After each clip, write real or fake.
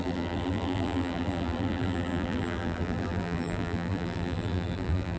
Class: fake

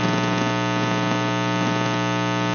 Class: real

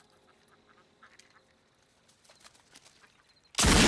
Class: real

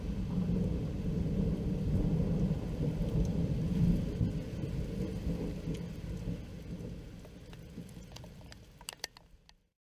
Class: real